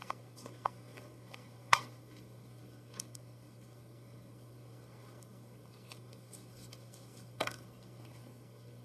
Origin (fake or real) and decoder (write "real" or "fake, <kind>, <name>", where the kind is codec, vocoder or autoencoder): fake, codec, SNAC